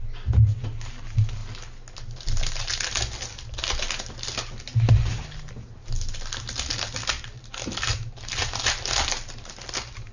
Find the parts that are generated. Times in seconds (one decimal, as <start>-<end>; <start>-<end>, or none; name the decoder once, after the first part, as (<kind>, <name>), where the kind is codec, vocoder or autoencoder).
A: none